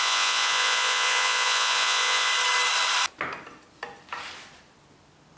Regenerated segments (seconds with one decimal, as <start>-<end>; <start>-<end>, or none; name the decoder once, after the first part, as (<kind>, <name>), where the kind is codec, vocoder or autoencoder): 0.0-2.3 (vocoder, Vocos)